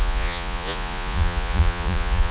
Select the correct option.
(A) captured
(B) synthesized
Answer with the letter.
B